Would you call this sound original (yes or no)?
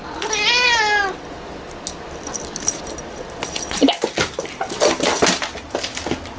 yes